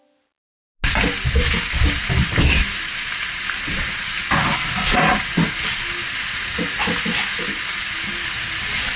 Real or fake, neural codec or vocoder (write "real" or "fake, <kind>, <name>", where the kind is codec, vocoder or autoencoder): real